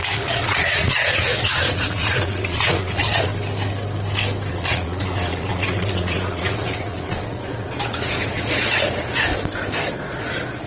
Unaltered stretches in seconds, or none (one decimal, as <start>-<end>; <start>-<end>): 3.3-4.5; 9.3-9.9